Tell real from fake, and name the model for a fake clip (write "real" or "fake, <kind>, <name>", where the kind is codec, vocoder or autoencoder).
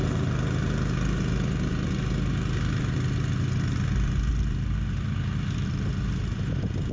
real